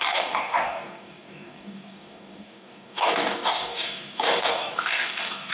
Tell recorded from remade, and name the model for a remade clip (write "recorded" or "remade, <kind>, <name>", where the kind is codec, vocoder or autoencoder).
remade, codec, DAC